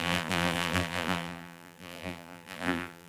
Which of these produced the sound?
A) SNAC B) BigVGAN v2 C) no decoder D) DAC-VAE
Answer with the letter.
B